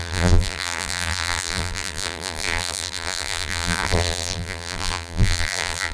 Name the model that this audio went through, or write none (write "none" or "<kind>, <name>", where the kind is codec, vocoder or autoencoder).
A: vocoder, BigVGAN v2